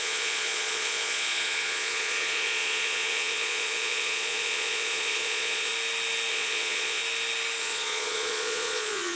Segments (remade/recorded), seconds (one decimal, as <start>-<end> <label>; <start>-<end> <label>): 0.0-5.7 remade; 5.7-6.3 recorded; 6.3-7.0 remade; 7.0-7.6 recorded; 7.6-9.2 remade